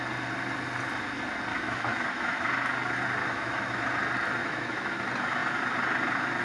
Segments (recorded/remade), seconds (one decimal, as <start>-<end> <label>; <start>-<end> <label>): 0.0-1.5 recorded; 1.5-2.5 remade; 2.5-3.2 recorded; 3.2-3.8 remade; 3.8-4.4 recorded; 4.4-4.9 remade; 4.9-6.4 recorded